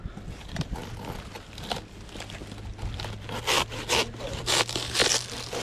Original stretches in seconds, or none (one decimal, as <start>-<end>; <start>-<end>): 0.0-5.6